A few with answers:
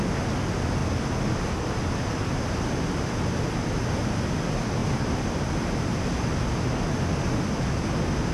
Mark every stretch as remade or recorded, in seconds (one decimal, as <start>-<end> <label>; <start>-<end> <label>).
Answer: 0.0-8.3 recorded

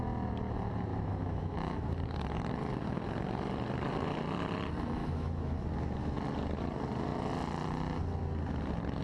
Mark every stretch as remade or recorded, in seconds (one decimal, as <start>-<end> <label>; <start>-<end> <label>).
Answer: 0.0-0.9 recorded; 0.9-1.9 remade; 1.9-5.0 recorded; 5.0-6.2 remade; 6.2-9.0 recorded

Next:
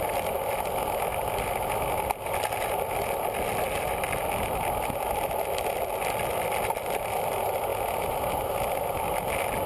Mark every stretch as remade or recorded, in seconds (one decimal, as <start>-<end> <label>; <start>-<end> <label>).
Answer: 0.0-9.7 recorded

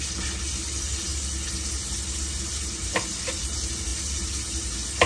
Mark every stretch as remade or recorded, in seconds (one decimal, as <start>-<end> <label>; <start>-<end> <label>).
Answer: 0.0-5.1 recorded